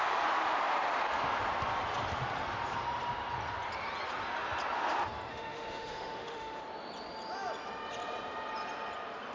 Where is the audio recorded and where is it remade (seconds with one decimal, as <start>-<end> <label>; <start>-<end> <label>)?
0.0-5.3 recorded; 5.3-6.6 remade; 6.6-9.3 recorded